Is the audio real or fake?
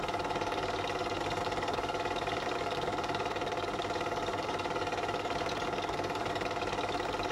fake